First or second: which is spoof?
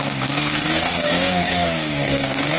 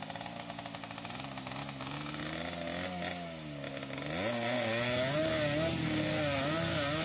first